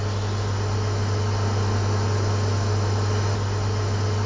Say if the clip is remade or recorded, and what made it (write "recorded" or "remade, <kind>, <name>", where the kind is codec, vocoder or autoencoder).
recorded